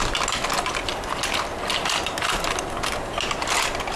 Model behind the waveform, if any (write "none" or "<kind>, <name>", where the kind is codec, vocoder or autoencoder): none